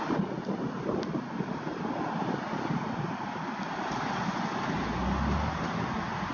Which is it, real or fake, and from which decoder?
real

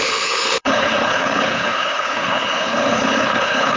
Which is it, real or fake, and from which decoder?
fake, codec, HILCodec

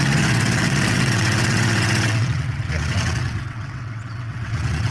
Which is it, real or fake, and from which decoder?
fake, vocoder, WaveNeXt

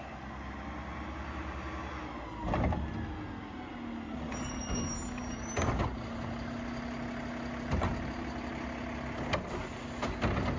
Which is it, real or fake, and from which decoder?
real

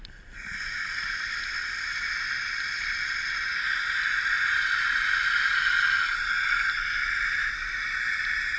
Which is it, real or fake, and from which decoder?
real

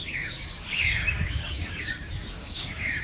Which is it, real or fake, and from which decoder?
fake, codec, DAC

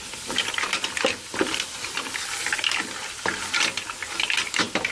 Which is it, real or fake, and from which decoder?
real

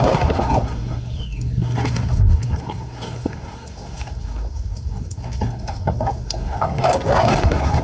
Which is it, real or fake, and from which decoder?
fake, codec, SNAC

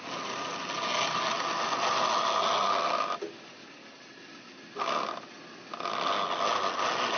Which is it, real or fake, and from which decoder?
real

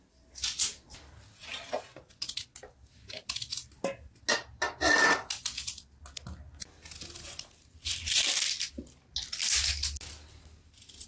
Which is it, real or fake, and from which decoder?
real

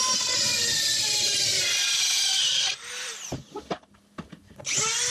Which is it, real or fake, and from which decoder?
real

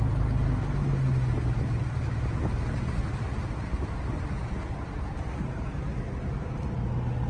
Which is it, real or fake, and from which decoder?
real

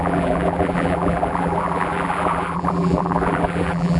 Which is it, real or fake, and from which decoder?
fake, vocoder, BigVGAN v2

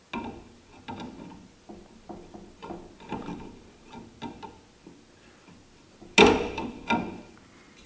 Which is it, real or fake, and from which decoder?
real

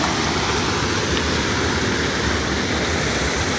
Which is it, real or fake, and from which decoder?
real